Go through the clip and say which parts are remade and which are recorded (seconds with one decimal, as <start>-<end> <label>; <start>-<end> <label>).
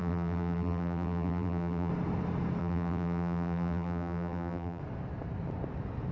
0.0-1.9 remade; 1.9-2.6 recorded; 2.6-4.8 remade; 4.8-6.1 recorded